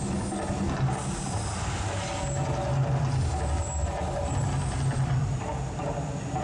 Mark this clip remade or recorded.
recorded